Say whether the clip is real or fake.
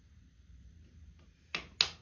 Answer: real